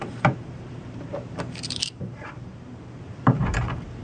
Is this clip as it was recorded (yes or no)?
no